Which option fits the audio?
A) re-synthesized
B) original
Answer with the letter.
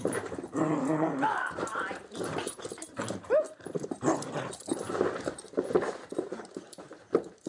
A